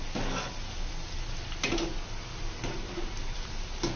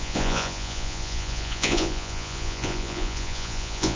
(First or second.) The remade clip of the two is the second